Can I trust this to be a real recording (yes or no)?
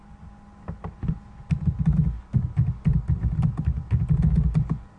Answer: yes